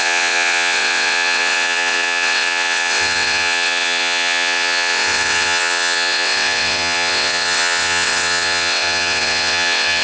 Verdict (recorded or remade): remade